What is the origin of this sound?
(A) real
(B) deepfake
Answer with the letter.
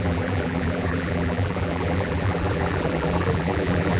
B